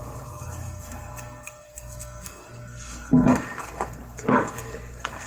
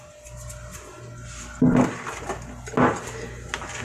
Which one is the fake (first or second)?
first